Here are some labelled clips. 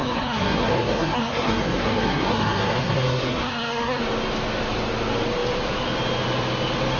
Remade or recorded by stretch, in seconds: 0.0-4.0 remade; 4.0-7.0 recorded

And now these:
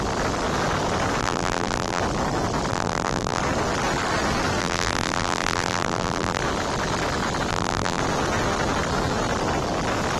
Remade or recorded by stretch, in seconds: 0.0-1.2 recorded; 1.2-2.0 remade; 2.0-2.7 recorded; 2.7-3.4 remade; 3.4-4.6 recorded; 4.6-6.4 remade; 6.4-7.5 recorded; 7.5-8.0 remade; 8.0-10.2 recorded